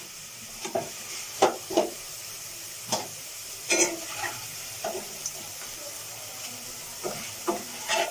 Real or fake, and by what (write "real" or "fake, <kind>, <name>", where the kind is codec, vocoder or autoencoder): fake, vocoder, BigVGAN v2